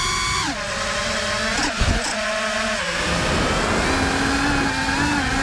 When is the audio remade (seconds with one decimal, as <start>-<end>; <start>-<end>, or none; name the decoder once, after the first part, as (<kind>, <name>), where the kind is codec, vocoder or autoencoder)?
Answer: 1.5-2.3 (vocoder, Vocos)